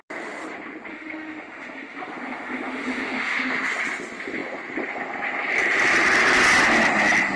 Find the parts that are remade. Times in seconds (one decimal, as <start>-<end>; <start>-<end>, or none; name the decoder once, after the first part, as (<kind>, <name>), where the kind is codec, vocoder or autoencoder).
0.9-3.5 (autoencoder, DAC-VAE)